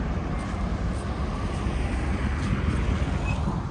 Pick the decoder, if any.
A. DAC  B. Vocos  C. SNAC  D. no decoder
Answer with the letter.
D